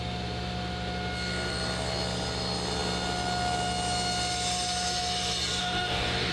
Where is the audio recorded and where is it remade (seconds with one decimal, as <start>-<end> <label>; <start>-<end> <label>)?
0.0-5.6 recorded; 5.6-6.3 remade